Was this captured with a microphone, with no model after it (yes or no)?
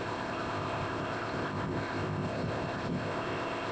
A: no